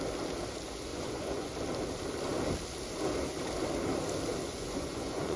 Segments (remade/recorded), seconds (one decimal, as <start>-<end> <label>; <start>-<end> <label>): 0.0-0.9 recorded; 0.9-1.5 remade; 1.5-4.5 recorded; 4.5-5.4 remade